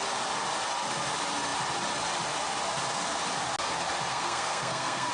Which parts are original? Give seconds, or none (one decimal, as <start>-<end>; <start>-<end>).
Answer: 0.0-4.1